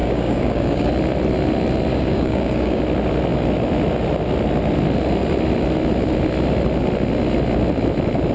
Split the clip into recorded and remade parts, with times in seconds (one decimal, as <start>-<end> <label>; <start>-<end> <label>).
0.0-0.9 remade; 0.9-1.9 recorded; 1.9-2.8 remade; 2.8-8.3 recorded